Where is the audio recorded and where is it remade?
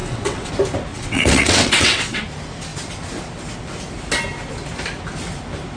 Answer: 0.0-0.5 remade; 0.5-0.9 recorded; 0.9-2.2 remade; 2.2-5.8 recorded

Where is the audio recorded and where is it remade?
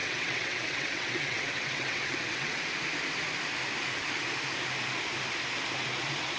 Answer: 0.0-2.6 remade; 2.6-6.4 recorded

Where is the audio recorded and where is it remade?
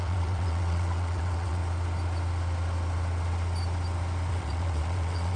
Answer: 0.0-1.6 remade; 1.6-4.3 recorded; 4.3-5.4 remade